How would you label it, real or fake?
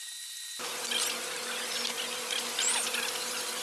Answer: real